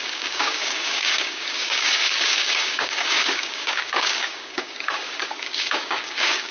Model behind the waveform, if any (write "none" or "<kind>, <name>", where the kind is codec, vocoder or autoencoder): codec, DAC